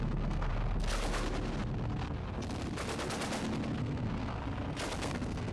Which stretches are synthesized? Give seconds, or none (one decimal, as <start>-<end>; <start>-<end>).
0.0-0.5; 3.8-4.4; 5.0-5.5